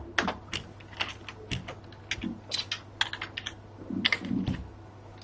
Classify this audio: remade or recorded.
recorded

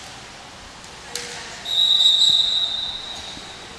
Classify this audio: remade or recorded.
recorded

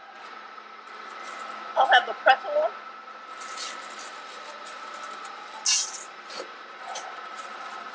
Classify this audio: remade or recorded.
recorded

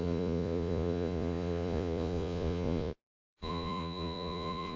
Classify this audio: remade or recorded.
remade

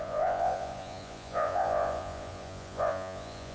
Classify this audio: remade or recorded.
remade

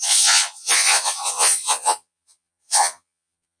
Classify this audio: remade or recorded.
remade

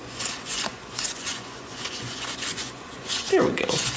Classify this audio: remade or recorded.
remade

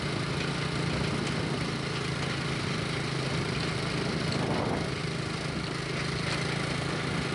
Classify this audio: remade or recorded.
recorded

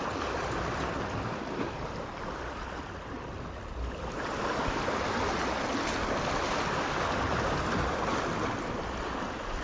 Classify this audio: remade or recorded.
recorded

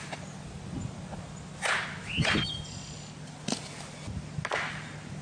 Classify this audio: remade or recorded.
recorded